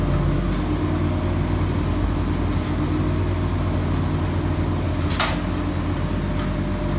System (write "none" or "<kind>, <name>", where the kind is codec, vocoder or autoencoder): none